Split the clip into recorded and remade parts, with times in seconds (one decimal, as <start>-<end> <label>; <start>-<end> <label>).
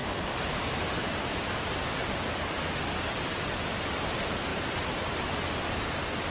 0.0-1.2 remade; 1.2-2.0 recorded; 2.0-2.6 remade; 2.6-6.3 recorded